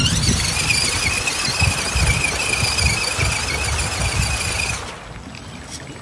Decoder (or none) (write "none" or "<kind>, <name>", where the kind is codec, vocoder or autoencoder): none